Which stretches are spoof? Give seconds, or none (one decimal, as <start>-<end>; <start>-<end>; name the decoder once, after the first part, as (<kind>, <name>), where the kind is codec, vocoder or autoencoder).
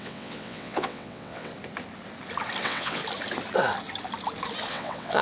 0.0-1.5 (vocoder, WaveNeXt); 2.6-3.0; 4.7-5.2